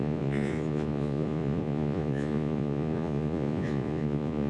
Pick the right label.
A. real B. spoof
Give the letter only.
B